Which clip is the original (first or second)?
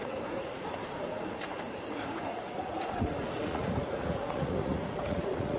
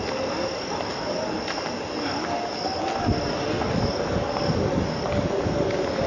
second